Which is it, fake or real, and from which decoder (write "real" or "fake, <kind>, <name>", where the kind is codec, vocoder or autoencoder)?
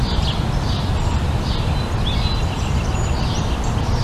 real